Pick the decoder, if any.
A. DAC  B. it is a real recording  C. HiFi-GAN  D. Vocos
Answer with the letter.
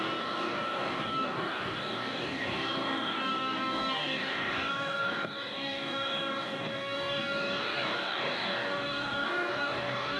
A